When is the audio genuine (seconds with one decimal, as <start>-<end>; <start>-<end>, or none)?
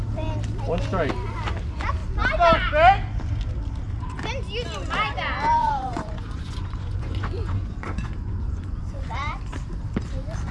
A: 0.0-5.6; 9.4-10.5